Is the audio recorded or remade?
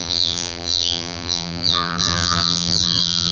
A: remade